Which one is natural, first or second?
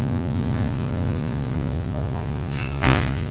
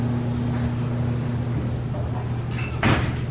second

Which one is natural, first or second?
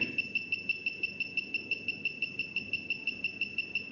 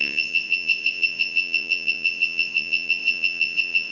first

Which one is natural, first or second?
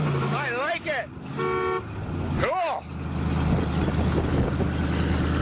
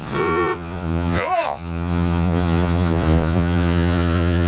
first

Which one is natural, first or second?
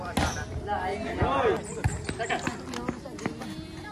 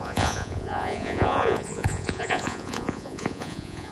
first